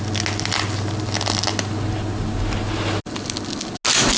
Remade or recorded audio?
recorded